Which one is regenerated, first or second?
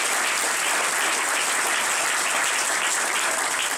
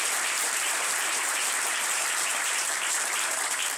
second